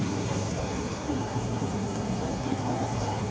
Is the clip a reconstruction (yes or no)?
yes